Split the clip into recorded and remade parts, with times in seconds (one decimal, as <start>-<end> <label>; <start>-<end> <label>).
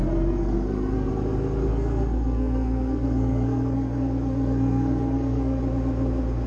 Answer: 0.0-1.1 remade; 1.1-1.7 recorded; 1.7-5.6 remade; 5.6-6.5 recorded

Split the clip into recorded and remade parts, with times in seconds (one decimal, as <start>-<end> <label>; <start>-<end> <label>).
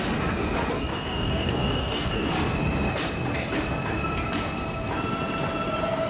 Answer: 0.0-0.9 recorded; 0.9-2.3 remade; 2.3-6.1 recorded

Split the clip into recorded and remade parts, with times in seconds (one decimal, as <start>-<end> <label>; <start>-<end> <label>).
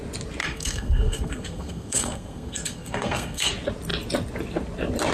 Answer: 0.0-0.4 recorded; 0.4-3.5 remade; 3.5-5.1 recorded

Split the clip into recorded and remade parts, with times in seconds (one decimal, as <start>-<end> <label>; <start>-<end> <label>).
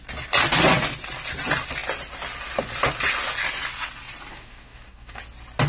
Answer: 0.0-4.3 recorded; 4.3-5.2 remade; 5.2-5.7 recorded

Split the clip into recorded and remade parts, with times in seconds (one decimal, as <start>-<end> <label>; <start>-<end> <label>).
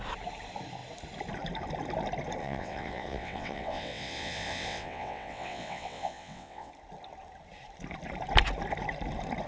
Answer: 0.0-2.4 recorded; 2.4-6.7 remade; 6.7-9.5 recorded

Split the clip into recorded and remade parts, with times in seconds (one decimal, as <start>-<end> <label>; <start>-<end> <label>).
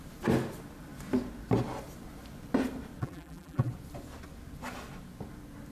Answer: 0.0-3.0 recorded; 3.0-3.7 remade; 3.7-5.7 recorded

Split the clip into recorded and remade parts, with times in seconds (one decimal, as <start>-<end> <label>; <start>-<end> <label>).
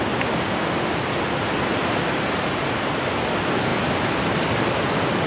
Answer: 0.0-5.3 recorded